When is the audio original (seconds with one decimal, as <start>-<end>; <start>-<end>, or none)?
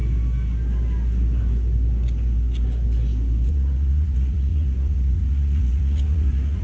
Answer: 0.0-3.5